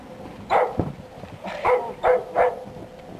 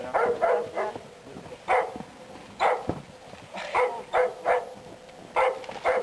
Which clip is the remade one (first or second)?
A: first